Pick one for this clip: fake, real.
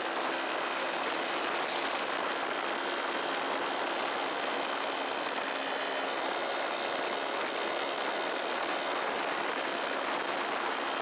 real